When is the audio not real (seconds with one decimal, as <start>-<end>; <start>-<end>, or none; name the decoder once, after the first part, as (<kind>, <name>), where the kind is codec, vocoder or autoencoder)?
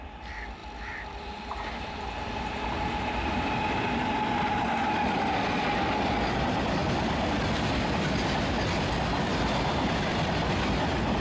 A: 0.6-2.4 (vocoder, BigVGAN v2)